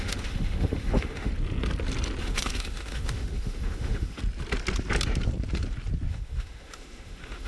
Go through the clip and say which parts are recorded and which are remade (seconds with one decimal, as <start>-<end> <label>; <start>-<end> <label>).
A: 0.0-1.3 remade; 1.3-2.2 recorded; 2.2-4.2 remade; 4.2-6.1 recorded; 6.1-7.5 remade